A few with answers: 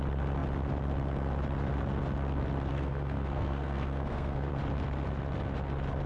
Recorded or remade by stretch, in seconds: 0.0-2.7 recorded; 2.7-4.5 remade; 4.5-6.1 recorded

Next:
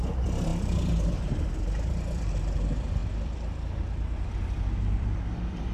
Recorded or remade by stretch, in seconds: 0.0-5.7 remade

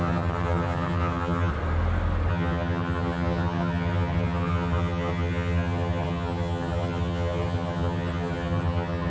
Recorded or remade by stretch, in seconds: 0.0-1.5 remade; 1.5-2.3 recorded; 2.3-9.1 remade

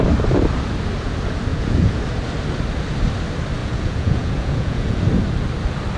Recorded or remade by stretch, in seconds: 0.0-1.5 recorded; 1.5-2.0 remade; 2.0-3.6 recorded; 3.6-5.0 remade; 5.0-6.0 recorded

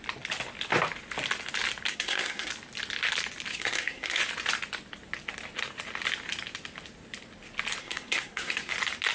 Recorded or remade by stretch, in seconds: 0.0-1.9 recorded; 1.9-2.5 remade; 2.5-3.5 recorded; 3.5-4.2 remade; 4.2-7.8 recorded; 7.8-8.7 remade; 8.7-9.1 recorded